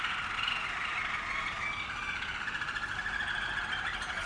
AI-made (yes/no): no